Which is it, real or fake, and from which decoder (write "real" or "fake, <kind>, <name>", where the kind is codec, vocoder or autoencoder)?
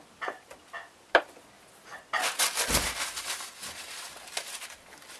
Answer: real